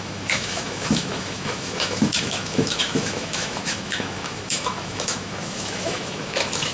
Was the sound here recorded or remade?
remade